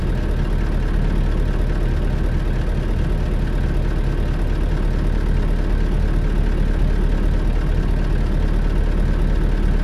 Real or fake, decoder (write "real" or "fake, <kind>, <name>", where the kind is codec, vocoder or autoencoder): real